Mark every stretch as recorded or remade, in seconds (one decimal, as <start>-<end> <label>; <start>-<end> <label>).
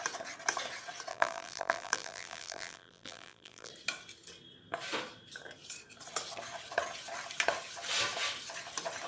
0.0-1.1 recorded; 1.1-3.7 remade; 3.7-9.1 recorded